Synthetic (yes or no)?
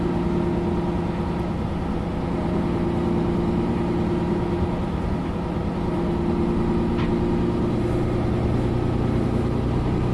no